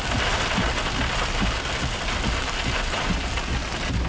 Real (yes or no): yes